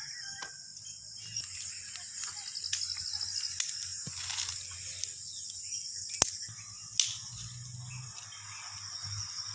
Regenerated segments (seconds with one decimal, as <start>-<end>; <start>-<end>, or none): none